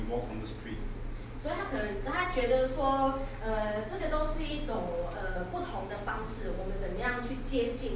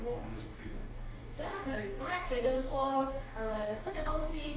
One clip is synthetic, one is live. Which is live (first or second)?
first